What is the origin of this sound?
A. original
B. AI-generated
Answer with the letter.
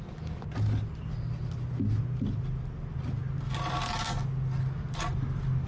A